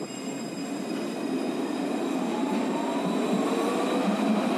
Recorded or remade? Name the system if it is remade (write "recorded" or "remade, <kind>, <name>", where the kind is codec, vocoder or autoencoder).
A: recorded